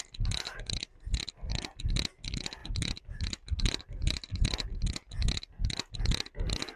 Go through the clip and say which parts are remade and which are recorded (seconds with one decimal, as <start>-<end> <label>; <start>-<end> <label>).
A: 0.0-2.6 recorded; 2.6-4.3 remade; 4.3-6.8 recorded